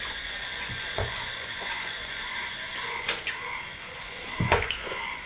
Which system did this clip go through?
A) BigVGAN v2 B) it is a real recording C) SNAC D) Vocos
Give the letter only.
D